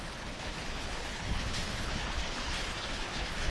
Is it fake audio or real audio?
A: fake